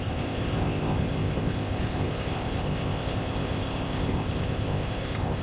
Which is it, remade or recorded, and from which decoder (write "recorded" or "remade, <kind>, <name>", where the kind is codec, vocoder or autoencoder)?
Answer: remade, codec, ZipCodec